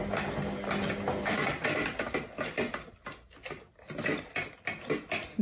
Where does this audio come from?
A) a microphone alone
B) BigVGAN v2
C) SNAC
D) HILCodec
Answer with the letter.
A